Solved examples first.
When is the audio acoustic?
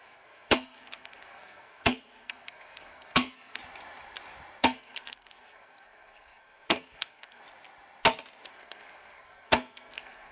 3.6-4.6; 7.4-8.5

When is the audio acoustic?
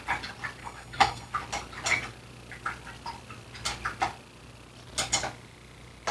0.0-0.6; 1.3-6.1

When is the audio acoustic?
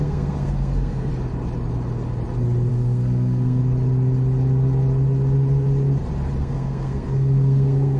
1.1-2.7; 3.6-6.4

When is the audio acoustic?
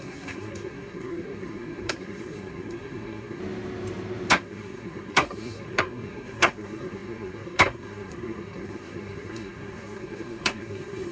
3.4-4.3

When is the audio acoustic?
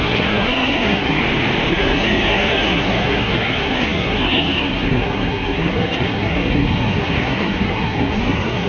1.2-1.7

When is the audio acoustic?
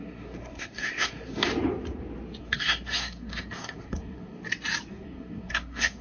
1.5-2.4; 4.4-4.9